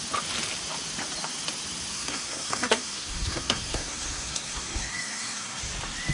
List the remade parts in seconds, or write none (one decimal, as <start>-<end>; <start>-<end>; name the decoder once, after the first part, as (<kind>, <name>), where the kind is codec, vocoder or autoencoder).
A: 1.9-5.6 (codec, SNAC)